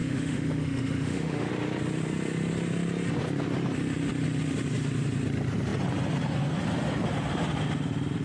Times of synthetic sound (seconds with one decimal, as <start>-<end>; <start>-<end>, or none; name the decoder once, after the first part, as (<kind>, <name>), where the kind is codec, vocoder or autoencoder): 0.0-1.5 (autoencoder, DAC-VAE)